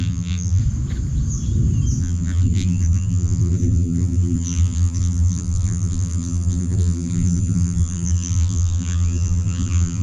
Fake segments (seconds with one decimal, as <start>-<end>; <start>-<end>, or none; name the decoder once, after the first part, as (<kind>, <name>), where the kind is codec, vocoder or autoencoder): 0.0-0.6 (vocoder, BigVGAN v2); 2.0-10.0